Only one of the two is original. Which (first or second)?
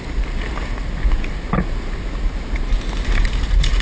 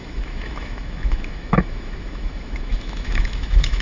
first